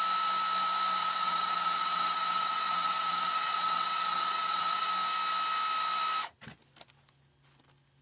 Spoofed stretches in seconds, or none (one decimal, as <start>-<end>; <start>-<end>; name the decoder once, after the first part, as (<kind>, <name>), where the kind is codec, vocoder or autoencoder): 1.0-4.9 (vocoder, WaveNeXt)